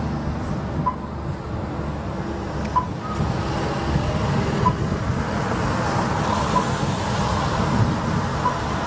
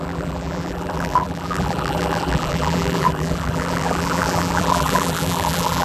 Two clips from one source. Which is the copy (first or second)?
second